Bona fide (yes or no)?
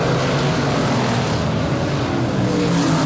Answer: yes